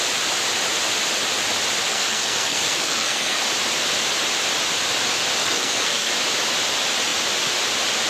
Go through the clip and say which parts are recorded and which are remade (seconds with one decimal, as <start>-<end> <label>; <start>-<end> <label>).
0.0-1.9 recorded; 1.9-3.4 remade; 3.4-5.4 recorded; 5.4-6.1 remade; 6.1-8.1 recorded